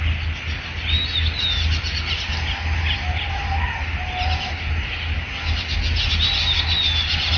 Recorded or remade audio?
recorded